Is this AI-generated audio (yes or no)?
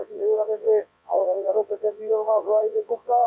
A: yes